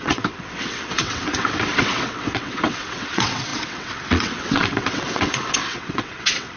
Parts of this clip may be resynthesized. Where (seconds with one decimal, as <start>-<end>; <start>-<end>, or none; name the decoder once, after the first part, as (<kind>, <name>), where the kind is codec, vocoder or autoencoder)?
0.0-6.6 (vocoder, WaveNeXt)